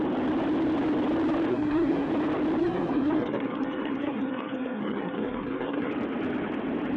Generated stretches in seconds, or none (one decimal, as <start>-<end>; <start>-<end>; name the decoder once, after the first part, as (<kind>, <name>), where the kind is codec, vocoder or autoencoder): 1.5-2.1 (codec, SNAC); 2.6-5.9